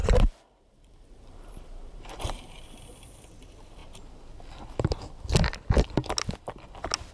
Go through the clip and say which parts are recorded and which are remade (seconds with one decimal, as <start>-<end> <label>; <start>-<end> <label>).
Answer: 0.0-2.2 remade; 2.2-7.1 recorded